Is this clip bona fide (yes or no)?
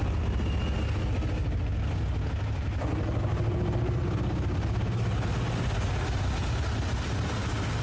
yes